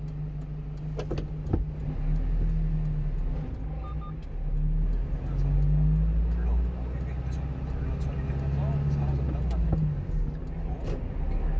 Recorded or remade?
recorded